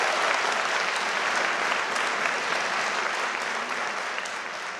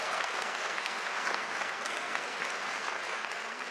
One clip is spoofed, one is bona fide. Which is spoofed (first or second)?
second